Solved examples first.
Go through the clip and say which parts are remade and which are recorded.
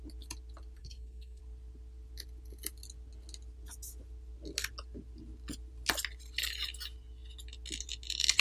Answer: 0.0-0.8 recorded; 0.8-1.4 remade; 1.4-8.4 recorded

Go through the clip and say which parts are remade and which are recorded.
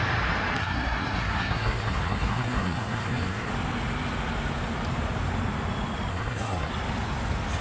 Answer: 0.0-0.6 recorded; 0.6-3.5 remade; 3.5-6.1 recorded; 6.1-6.7 remade; 6.7-7.6 recorded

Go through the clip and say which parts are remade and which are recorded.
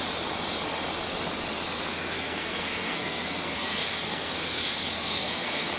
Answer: 0.0-1.9 recorded; 1.9-5.8 remade